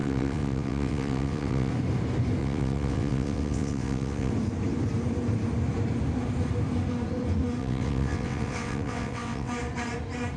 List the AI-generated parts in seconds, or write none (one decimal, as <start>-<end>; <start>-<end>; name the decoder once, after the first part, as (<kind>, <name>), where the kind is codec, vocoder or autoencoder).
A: 0.0-1.7 (vocoder, WaveNeXt); 2.4-4.3; 7.6-9.5